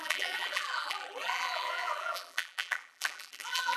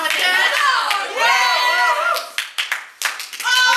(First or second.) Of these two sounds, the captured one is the second